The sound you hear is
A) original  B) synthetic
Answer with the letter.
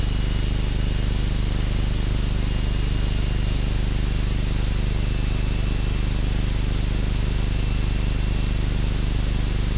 A